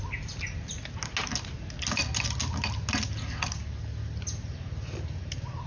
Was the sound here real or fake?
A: real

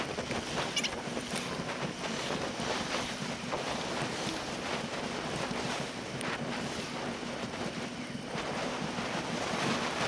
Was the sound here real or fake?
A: real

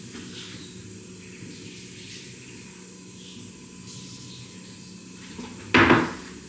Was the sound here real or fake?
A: real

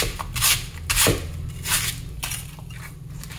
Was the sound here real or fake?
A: real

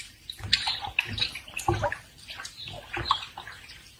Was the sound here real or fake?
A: real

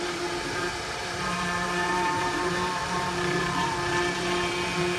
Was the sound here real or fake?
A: fake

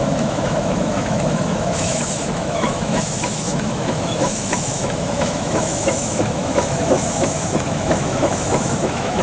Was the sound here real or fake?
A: fake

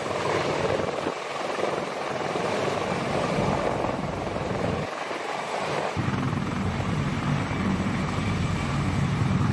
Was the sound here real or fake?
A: fake